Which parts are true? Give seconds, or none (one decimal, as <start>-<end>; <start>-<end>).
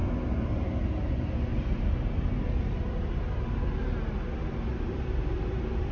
0.0-1.5; 2.0-4.7; 5.5-5.9